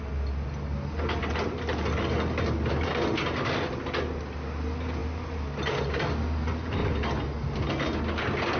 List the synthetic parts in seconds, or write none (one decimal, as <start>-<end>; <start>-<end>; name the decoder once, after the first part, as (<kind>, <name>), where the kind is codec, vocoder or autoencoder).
none